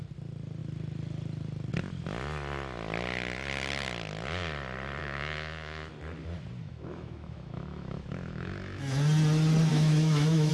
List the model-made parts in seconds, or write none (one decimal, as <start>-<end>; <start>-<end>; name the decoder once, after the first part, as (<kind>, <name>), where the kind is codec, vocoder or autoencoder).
5.0-5.9 (autoencoder, DAC-VAE); 6.6-8.8; 9.7-10.5